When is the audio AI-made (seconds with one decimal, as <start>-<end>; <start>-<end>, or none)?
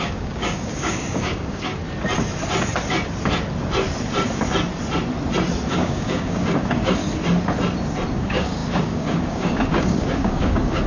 0.0-1.8; 5.7-7.0; 8.1-10.9